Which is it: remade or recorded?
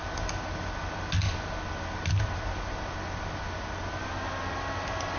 recorded